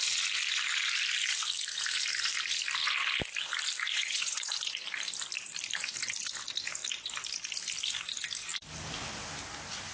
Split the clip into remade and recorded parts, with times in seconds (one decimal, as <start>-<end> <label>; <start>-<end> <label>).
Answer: 0.0-3.9 recorded; 3.9-4.5 remade; 4.5-9.9 recorded

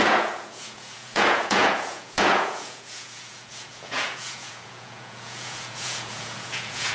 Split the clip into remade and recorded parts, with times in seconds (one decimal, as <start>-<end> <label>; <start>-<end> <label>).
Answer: 0.0-6.9 remade